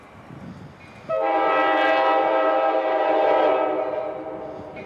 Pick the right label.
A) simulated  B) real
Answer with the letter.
B